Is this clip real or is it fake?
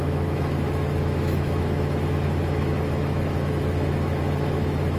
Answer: fake